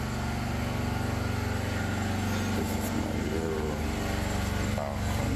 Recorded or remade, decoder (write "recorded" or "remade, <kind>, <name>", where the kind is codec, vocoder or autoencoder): recorded